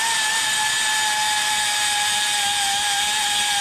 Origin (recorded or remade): recorded